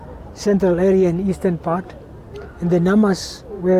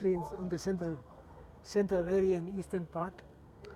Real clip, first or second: first